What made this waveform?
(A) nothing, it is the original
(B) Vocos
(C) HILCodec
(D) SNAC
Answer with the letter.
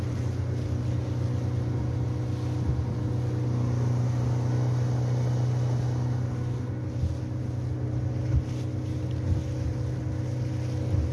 A